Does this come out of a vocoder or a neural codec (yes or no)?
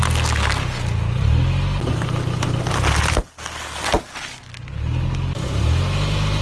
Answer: no